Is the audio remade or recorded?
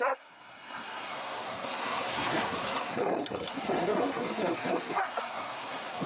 remade